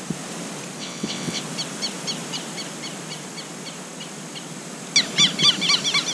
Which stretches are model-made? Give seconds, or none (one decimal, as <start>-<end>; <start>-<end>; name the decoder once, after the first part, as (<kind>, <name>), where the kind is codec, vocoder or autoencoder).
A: 0.8-1.4 (vocoder, WaveNeXt)